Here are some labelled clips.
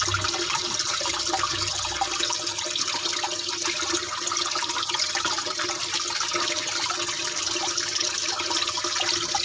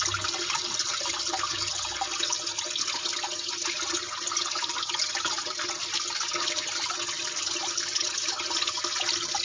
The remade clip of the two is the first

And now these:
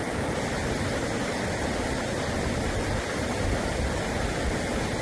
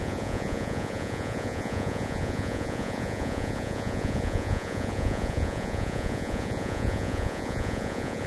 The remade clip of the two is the second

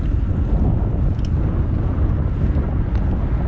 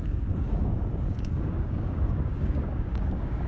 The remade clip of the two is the second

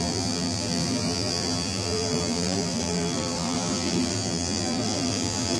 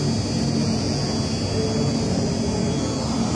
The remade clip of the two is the first